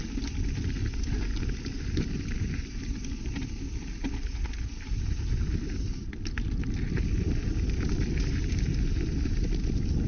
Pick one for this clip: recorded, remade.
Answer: recorded